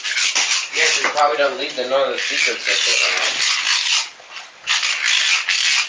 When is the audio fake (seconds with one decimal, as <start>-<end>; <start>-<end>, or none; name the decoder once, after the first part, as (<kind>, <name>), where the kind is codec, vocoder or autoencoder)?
none

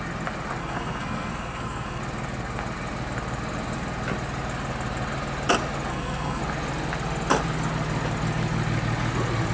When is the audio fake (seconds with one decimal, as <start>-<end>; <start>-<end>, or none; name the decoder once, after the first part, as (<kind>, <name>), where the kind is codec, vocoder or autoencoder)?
0.6-2.0 (codec, SNAC); 5.9-6.4

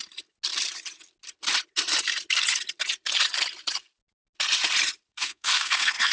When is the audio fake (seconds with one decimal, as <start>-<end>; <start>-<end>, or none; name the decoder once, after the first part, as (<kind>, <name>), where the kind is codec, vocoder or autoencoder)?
5.1-6.1 (codec, SNAC)